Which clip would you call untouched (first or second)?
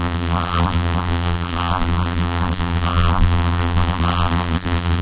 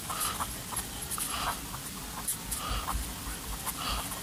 second